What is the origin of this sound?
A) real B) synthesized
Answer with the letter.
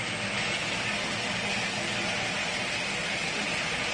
A